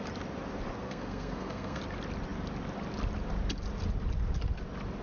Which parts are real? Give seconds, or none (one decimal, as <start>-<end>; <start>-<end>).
0.0-0.8; 1.8-5.0